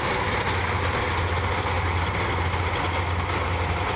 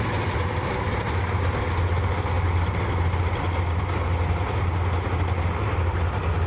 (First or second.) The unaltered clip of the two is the first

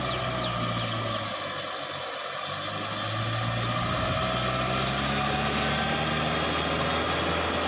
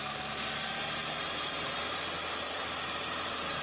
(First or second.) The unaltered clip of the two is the first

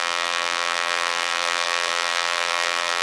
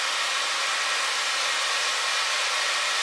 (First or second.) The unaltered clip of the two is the second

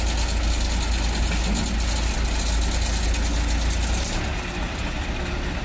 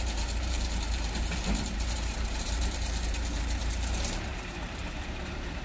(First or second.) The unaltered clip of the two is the first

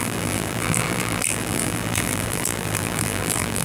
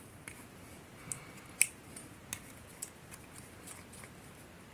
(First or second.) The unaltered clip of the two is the second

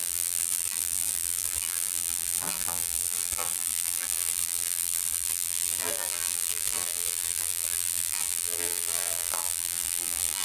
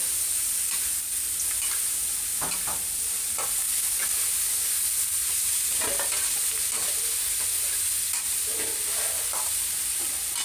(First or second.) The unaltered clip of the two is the second